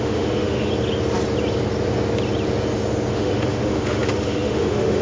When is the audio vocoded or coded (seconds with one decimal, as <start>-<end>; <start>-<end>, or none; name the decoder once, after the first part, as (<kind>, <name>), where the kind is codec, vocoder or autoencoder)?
0.0-0.7 (autoencoder, DAC-VAE); 3.1-5.0